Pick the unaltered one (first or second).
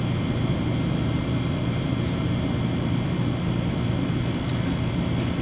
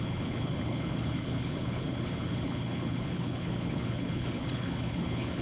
first